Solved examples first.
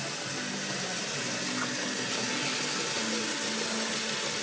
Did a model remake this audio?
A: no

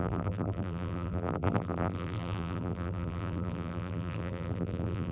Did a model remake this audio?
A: yes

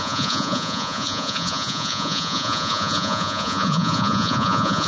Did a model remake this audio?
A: yes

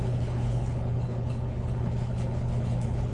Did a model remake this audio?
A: yes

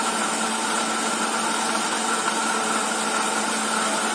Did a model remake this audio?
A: no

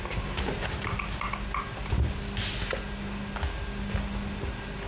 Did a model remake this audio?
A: no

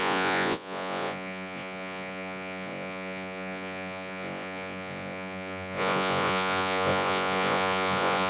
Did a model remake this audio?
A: yes